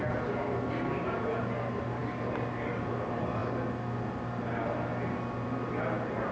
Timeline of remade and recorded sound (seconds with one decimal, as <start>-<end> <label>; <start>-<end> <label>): 0.0-6.3 recorded